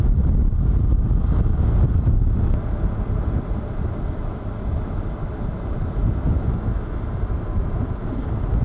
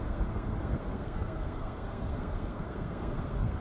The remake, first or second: second